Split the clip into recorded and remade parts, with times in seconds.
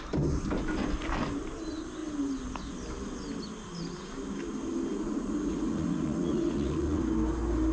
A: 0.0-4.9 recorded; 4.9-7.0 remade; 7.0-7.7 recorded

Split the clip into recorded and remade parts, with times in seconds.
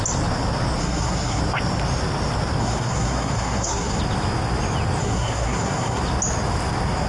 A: 0.0-0.8 recorded; 0.8-1.4 remade; 1.4-2.6 recorded; 2.6-4.0 remade; 4.0-5.0 recorded; 5.0-6.0 remade; 6.0-7.1 recorded